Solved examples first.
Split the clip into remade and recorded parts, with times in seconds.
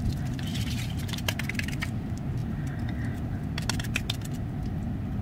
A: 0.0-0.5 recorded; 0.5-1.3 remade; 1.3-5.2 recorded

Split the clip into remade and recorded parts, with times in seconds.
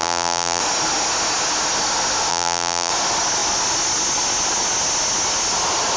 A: 0.0-0.6 remade; 0.6-2.3 recorded; 2.3-2.9 remade; 2.9-6.0 recorded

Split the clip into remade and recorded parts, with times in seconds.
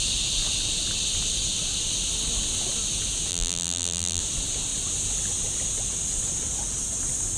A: 0.0-3.3 recorded; 3.3-4.2 remade; 4.2-7.4 recorded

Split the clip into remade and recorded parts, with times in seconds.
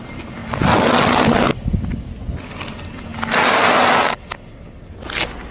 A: 0.0-5.5 recorded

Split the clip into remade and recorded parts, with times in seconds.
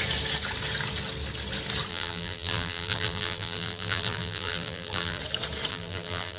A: 0.0-1.9 recorded; 1.9-5.2 remade; 5.2-5.7 recorded; 5.7-6.4 remade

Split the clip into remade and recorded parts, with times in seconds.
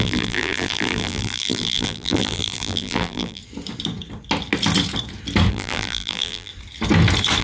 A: 0.0-3.4 remade; 3.4-5.5 recorded; 5.5-6.5 remade; 6.5-7.4 recorded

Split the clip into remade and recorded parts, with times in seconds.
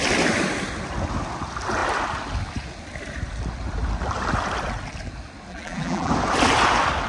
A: 0.0-5.5 recorded; 5.5-6.1 remade; 6.1-7.1 recorded